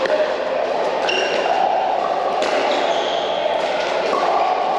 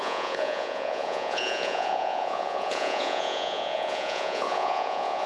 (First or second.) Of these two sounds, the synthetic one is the second